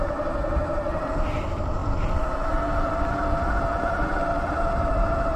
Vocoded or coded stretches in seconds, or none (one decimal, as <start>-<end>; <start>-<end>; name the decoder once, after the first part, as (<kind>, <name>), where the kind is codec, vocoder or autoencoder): 0.0-3.2 (vocoder, BigVGAN v2); 4.9-5.4